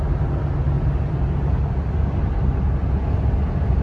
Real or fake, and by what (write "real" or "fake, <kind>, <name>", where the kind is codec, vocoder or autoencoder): real